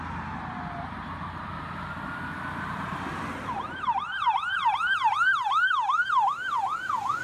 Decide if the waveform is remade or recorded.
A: recorded